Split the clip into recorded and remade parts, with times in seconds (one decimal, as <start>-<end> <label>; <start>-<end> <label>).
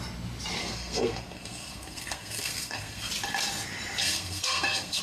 0.0-0.6 recorded; 0.6-3.1 remade; 3.1-4.0 recorded; 4.0-5.0 remade